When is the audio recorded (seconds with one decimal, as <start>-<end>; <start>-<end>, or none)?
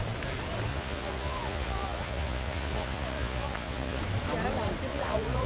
0.0-0.7; 4.0-4.9